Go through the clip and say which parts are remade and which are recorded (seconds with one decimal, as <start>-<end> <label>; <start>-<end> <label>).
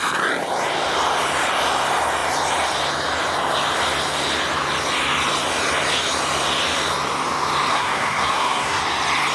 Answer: 0.0-7.7 recorded; 7.7-8.8 remade; 8.8-9.3 recorded